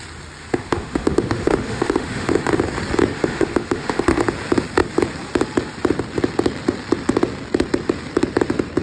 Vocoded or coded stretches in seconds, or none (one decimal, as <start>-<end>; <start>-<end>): 0.4-2.6; 3.1-4.2